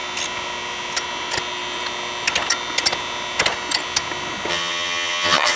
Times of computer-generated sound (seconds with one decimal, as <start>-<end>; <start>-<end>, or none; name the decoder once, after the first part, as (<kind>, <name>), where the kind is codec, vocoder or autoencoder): 4.5-5.6 (vocoder, HiFi-GAN)